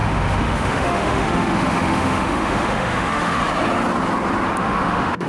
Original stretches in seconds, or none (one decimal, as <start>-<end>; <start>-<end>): 3.4-4.6